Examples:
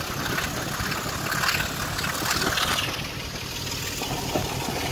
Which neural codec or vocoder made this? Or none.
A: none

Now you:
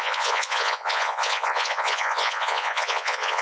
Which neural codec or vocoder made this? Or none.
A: vocoder, Vocos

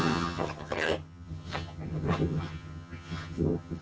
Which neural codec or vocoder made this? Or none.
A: vocoder, HiFi-GAN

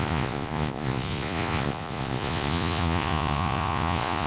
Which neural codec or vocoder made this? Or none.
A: vocoder, Vocos